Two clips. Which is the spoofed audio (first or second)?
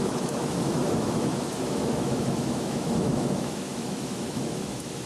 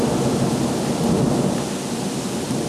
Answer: first